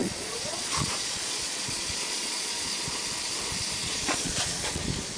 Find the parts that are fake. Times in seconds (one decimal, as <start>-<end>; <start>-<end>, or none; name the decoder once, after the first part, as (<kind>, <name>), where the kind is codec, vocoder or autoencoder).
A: 0.0-3.0 (vocoder, Vocos); 3.8-4.8